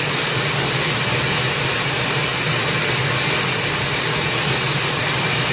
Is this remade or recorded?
recorded